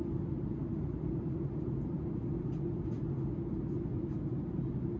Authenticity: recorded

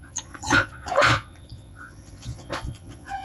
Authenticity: remade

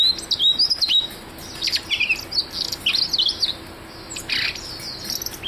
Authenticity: recorded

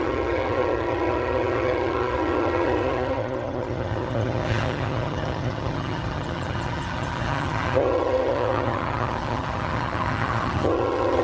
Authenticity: remade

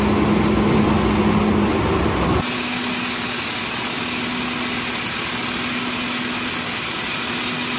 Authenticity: recorded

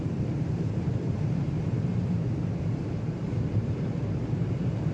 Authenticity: remade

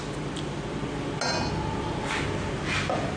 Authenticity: recorded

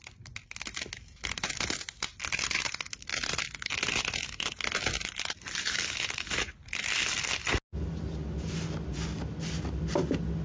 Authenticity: recorded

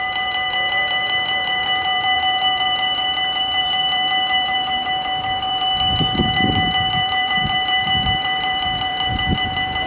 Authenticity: remade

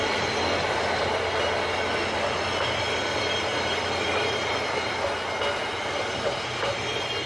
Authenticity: recorded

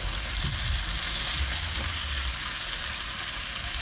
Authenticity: recorded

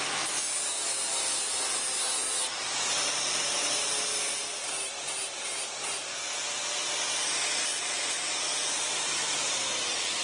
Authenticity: recorded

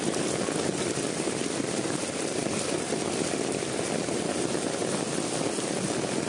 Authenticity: recorded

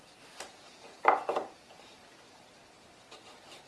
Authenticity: recorded